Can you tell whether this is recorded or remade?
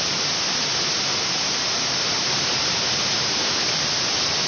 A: recorded